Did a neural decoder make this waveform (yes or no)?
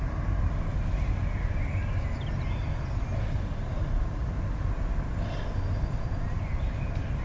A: no